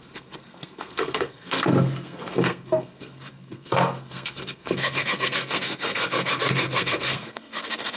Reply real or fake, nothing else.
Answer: fake